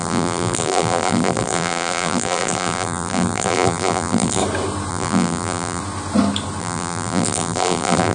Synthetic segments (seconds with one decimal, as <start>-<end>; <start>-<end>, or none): 0.0-4.4; 4.9-5.8; 6.6-8.1